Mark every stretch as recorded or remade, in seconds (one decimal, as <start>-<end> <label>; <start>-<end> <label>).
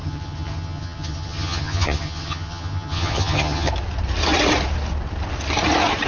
0.0-3.7 remade; 3.7-6.1 recorded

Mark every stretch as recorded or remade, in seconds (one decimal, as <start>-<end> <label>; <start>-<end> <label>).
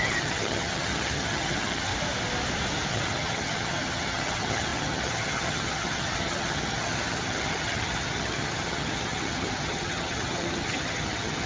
0.0-1.9 remade; 1.9-2.9 recorded; 2.9-11.5 remade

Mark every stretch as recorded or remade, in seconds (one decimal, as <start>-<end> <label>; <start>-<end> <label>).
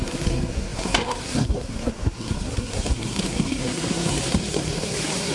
0.0-5.3 remade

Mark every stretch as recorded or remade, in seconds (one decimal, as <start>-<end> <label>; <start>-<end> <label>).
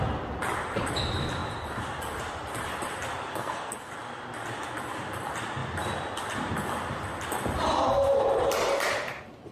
0.0-3.3 recorded; 3.3-3.9 remade; 3.9-9.5 recorded